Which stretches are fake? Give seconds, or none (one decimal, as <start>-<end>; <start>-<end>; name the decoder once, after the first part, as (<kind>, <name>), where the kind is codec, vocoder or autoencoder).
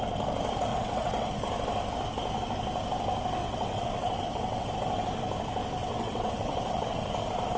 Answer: 0.7-1.3 (vocoder, WaveNeXt); 3.4-4.7; 5.8-7.0